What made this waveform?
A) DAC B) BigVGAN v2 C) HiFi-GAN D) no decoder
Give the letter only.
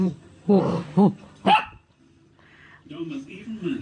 B